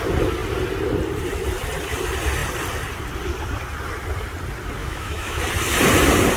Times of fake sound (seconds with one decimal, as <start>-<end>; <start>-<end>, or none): 4.8-5.4